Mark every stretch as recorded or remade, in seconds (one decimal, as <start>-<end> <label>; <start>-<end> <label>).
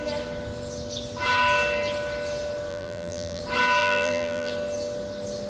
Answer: 0.0-2.7 recorded; 2.7-3.4 remade; 3.4-3.8 recorded; 3.8-4.5 remade; 4.5-5.5 recorded